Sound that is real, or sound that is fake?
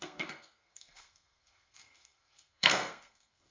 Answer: fake